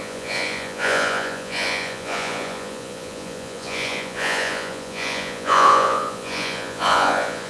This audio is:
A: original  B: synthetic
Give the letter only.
B